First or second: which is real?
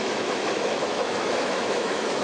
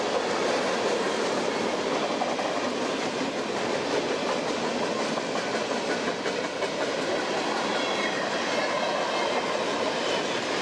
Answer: second